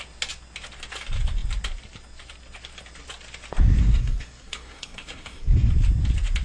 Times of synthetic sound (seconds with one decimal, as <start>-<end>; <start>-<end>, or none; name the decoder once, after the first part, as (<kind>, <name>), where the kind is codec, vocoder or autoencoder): 3.8-5.7 (codec, SNAC)